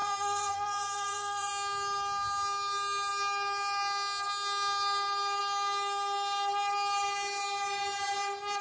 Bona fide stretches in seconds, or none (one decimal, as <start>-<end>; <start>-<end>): 1.5-8.6